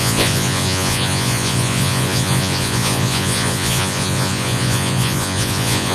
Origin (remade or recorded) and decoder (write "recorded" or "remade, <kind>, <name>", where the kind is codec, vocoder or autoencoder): remade, vocoder, Vocos